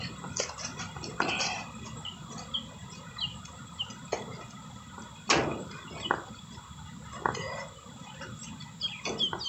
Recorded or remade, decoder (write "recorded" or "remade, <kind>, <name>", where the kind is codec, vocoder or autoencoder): recorded